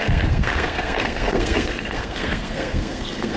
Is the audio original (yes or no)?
no